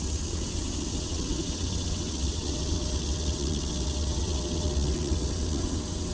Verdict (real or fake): fake